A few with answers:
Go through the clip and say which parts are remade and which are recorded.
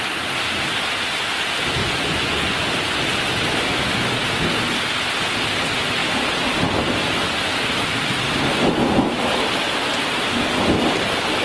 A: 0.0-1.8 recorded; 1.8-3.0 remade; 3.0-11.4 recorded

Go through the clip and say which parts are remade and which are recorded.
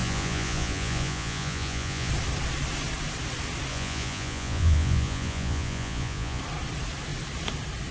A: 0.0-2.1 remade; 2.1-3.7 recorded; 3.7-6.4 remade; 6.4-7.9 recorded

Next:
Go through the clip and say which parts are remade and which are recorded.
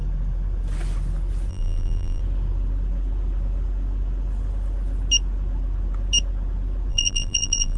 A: 0.0-1.5 recorded; 1.5-2.2 remade; 2.2-6.9 recorded; 6.9-7.8 remade